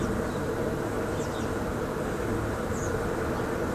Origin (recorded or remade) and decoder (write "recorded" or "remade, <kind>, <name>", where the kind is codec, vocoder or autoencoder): recorded